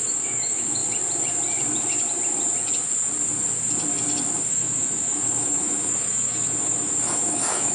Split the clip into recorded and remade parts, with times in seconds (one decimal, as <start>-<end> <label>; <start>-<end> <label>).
0.0-0.8 remade; 0.8-4.5 recorded; 4.5-7.7 remade